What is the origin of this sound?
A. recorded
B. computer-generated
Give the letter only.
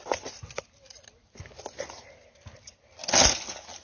A